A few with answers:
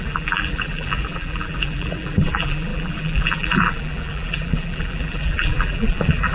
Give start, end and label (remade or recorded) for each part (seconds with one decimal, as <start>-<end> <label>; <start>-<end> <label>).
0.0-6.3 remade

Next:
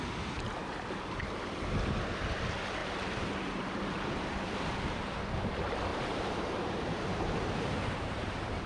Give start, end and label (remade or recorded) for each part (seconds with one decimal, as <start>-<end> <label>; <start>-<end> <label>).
0.0-2.8 recorded; 2.8-4.4 remade; 4.4-5.9 recorded; 5.9-8.7 remade

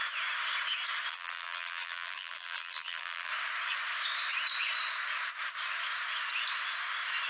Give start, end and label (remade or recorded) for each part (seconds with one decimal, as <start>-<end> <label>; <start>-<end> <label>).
0.0-1.1 recorded; 1.1-3.3 remade; 3.3-7.3 recorded